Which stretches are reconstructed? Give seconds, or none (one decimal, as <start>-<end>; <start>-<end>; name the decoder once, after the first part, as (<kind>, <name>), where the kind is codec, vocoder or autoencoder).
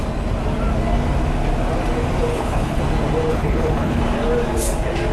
2.3-2.8 (codec, HILCodec); 3.3-4.0